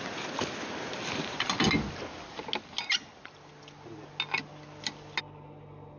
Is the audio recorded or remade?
recorded